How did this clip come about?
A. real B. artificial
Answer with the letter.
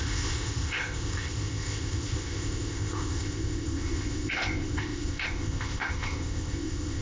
B